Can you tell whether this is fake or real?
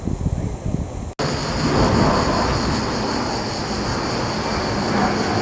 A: real